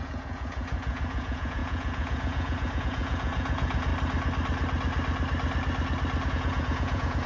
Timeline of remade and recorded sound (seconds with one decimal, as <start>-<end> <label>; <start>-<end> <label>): 0.0-3.9 remade; 3.9-6.3 recorded; 6.3-7.3 remade